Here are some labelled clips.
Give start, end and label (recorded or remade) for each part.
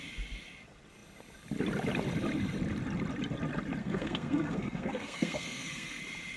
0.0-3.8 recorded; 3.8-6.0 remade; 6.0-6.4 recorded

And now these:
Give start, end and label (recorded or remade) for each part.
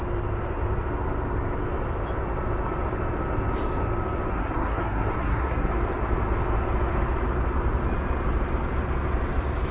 0.0-4.3 recorded; 4.3-5.7 remade; 5.7-9.7 recorded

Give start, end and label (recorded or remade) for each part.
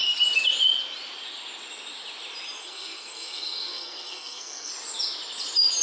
0.0-2.6 recorded; 2.6-4.7 remade; 4.7-5.8 recorded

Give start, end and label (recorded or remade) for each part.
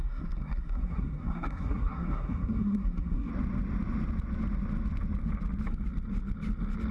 0.0-3.3 remade; 3.3-6.9 recorded